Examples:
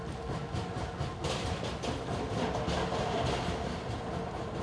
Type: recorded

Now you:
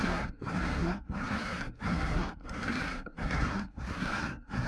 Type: remade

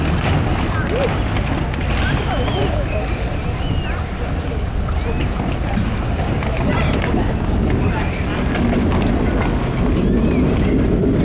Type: recorded